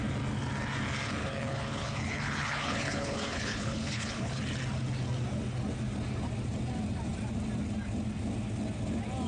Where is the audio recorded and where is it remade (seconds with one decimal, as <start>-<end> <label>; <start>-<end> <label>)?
0.0-1.2 recorded; 1.2-4.4 remade; 4.4-9.3 recorded